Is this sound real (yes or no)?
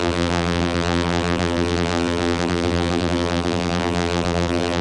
no